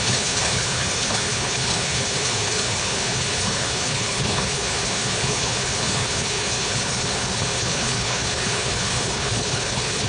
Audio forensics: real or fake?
fake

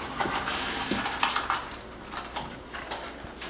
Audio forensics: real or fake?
real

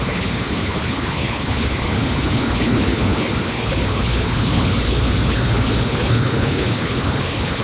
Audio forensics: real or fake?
fake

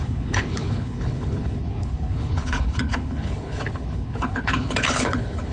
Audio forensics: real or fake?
fake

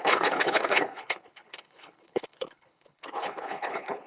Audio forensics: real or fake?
fake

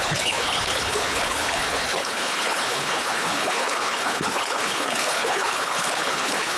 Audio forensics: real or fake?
fake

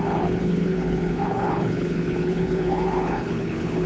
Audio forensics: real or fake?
fake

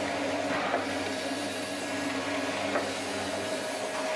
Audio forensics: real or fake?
real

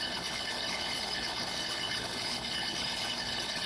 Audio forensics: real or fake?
fake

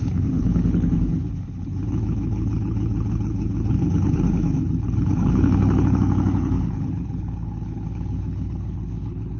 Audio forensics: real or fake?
fake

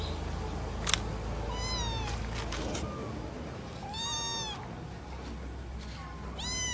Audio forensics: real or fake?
real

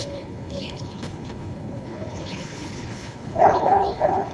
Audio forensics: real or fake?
fake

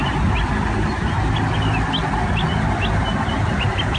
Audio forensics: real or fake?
real